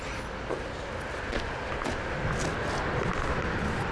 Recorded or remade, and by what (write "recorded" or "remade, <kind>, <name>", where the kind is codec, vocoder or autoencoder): recorded